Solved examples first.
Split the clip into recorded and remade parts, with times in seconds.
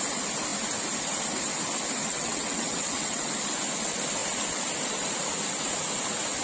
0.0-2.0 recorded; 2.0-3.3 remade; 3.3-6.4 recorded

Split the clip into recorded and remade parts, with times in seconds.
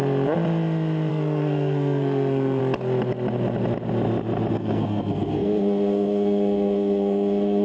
0.0-1.1 recorded; 1.1-2.6 remade; 2.6-4.5 recorded; 4.5-7.6 remade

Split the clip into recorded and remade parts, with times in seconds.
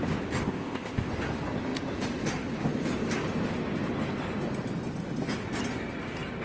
0.0-0.4 recorded; 0.4-1.1 remade; 1.1-6.4 recorded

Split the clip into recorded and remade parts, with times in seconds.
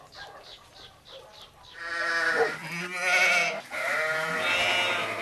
0.0-5.2 recorded